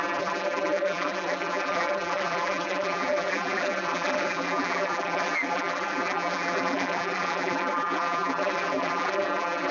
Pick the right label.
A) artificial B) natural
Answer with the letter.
A